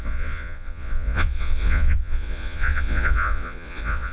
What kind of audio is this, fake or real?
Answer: fake